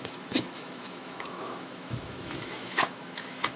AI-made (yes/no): yes